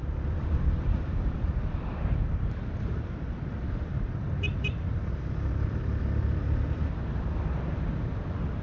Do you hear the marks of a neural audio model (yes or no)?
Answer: yes